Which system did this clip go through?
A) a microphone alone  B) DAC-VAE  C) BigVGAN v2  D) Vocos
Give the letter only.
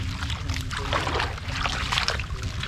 A